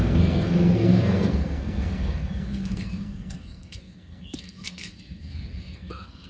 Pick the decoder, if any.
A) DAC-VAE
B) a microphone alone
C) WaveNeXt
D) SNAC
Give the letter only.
D